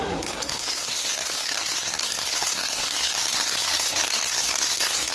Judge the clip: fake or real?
fake